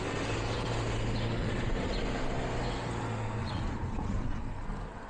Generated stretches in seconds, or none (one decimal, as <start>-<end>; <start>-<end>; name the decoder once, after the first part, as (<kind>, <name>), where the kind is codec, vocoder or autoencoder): 1.4-2.0 (vocoder, Vocos); 3.4-4.4